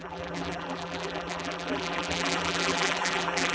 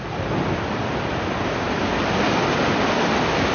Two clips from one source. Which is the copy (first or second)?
first